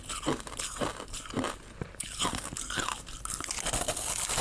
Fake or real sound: real